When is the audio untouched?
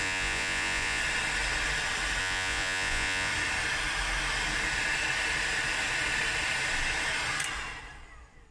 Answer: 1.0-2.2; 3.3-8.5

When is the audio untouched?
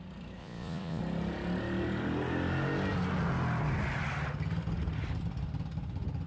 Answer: 0.0-0.4; 1.0-6.3